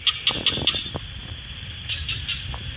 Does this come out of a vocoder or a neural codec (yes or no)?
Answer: no